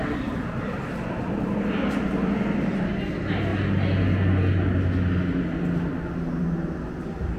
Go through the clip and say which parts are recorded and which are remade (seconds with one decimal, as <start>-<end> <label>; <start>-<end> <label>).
0.0-7.4 recorded